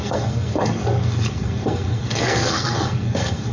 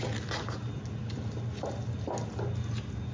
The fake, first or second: first